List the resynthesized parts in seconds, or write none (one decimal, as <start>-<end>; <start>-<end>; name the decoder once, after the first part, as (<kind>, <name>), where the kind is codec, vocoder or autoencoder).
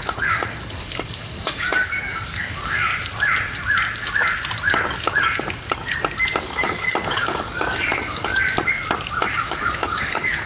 0.0-2.9 (codec, DAC); 6.4-8.3; 9.3-10.5